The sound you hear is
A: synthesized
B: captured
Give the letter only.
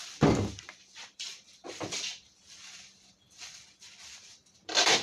A